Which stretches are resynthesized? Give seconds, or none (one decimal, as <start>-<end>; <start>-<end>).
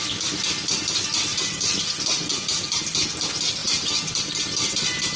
1.3-2.6; 3.6-5.2